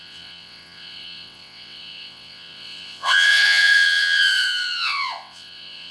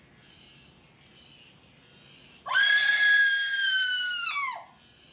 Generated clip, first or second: first